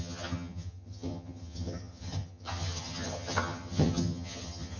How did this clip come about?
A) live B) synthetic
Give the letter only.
B